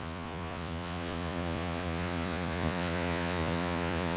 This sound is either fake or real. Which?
fake